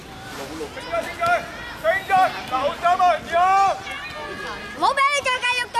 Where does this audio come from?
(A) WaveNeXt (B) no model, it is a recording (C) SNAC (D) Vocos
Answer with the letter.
B